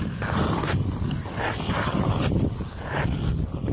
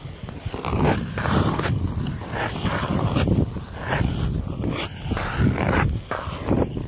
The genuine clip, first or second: second